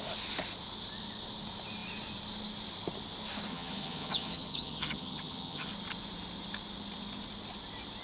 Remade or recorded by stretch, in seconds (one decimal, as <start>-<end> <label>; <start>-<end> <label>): 0.0-3.5 recorded; 3.5-5.7 remade; 5.7-8.0 recorded